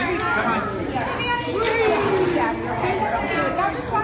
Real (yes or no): yes